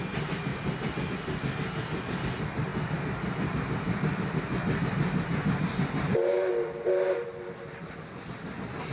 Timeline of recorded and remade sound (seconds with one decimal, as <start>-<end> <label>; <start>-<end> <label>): 0.0-8.9 recorded